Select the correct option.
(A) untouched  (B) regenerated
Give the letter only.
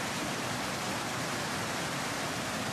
A